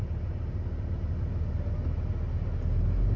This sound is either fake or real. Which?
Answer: real